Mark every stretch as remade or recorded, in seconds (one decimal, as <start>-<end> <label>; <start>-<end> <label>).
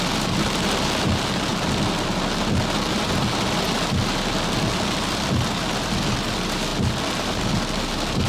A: 0.0-8.3 recorded